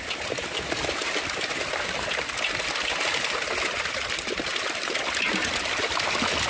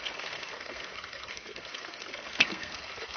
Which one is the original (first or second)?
first